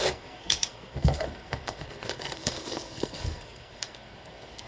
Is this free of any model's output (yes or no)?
no